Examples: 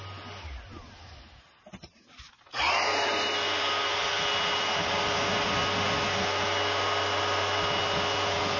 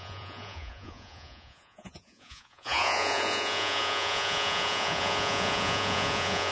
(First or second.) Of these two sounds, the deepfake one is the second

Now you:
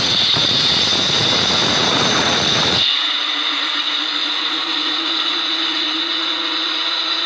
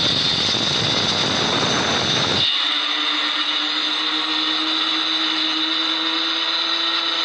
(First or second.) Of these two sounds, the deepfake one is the first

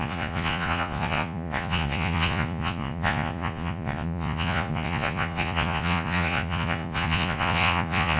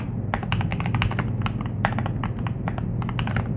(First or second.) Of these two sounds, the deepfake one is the first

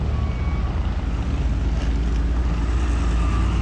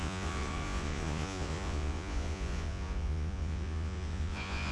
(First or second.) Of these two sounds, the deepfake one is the second